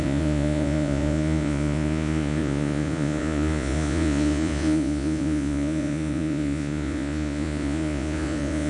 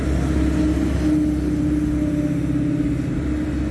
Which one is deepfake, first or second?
first